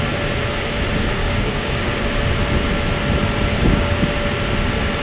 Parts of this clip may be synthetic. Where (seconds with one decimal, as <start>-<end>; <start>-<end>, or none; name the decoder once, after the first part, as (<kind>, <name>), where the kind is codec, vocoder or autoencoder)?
1.2-1.9 (codec, DAC); 3.5-4.1